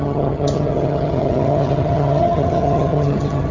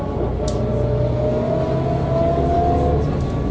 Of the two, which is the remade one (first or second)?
first